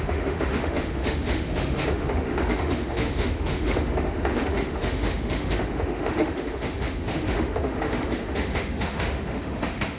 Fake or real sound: fake